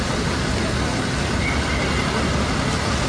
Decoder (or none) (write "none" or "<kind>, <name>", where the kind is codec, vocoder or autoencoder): none